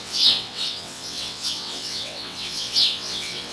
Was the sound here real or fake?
fake